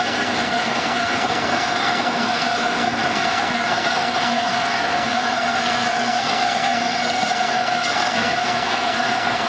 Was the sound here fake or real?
fake